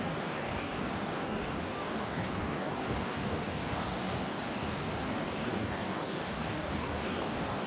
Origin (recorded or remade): remade